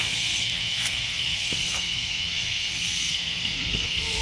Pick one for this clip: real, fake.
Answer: fake